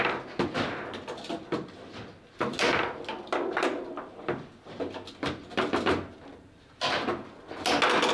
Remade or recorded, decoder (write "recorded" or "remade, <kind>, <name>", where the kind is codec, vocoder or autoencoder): recorded